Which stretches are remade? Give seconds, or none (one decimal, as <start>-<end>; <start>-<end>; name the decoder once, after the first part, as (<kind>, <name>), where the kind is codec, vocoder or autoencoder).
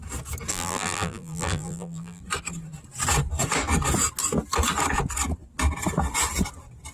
0.5-2.2 (vocoder, BigVGAN v2)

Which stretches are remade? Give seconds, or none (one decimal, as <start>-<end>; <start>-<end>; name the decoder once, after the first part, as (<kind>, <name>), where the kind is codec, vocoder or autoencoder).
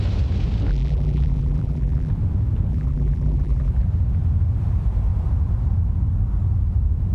0.7-2.1 (vocoder, BigVGAN v2); 2.7-3.7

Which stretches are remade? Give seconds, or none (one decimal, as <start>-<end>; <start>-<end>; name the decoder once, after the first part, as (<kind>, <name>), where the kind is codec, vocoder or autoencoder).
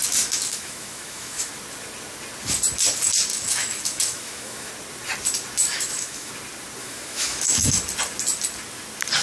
0.0-1.5 (autoencoder, DAC-VAE); 3.3-4.7; 5.7-6.3; 6.8-7.8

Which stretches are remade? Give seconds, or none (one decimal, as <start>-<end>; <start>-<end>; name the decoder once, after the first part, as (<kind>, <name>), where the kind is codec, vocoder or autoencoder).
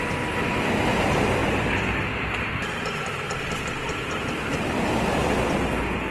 none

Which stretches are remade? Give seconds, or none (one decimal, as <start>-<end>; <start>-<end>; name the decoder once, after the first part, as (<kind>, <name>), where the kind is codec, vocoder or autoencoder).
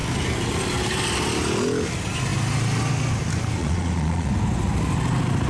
3.6-4.3 (vocoder, Vocos)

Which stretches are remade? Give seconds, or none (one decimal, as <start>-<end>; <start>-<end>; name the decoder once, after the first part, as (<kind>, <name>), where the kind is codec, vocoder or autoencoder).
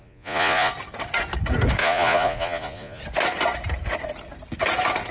0.0-0.7 (vocoder, Vocos); 1.8-3.0